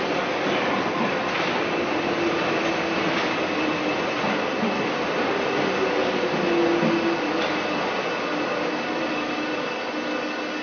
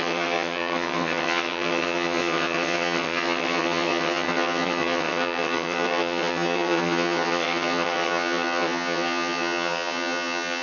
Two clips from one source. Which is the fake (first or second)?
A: second